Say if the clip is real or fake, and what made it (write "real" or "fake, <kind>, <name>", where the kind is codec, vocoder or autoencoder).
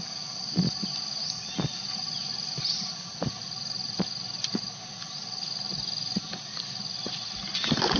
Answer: real